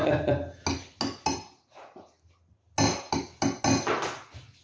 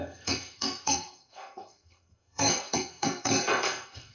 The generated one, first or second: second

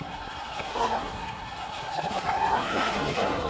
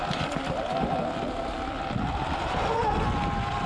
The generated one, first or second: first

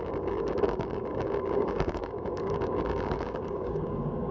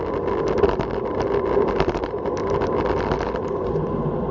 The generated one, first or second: first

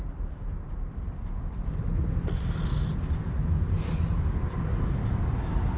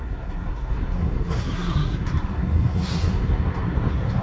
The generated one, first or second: second